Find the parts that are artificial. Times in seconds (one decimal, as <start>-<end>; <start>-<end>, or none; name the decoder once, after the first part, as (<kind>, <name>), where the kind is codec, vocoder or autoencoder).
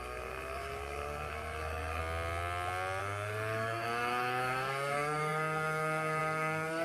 0.0-2.0 (codec, SNAC); 3.0-6.8